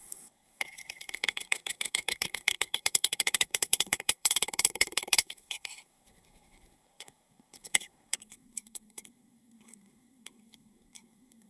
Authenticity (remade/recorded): remade